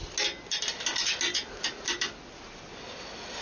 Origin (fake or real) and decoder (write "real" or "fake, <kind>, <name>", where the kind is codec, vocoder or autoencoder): real